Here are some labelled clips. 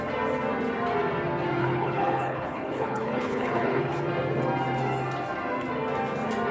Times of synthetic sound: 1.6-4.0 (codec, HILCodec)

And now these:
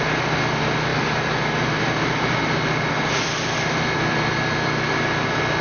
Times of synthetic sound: none

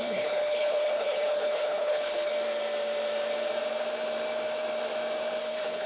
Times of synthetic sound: 0.0-2.3 (codec, HILCodec); 5.4-5.9

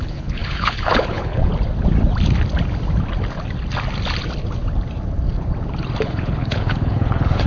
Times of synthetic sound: 0.0-1.5 (codec, HILCodec); 6.0-7.5

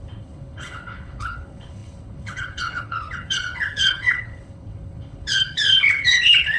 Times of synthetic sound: 0.0-6.6 (codec, HILCodec)

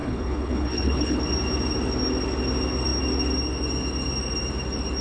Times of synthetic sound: 0.0-1.2 (codec, HILCodec)

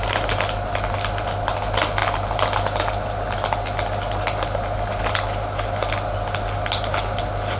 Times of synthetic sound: none